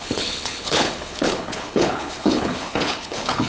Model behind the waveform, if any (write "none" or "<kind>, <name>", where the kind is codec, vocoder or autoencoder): codec, HILCodec